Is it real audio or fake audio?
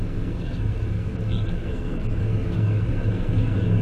fake